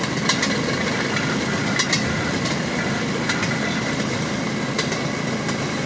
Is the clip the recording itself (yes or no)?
yes